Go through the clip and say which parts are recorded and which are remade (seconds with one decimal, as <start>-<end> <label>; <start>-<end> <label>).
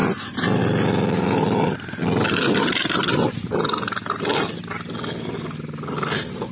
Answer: 0.0-0.6 remade; 0.6-6.5 recorded